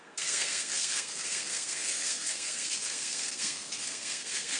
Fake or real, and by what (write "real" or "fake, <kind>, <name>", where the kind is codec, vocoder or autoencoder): fake, codec, SNAC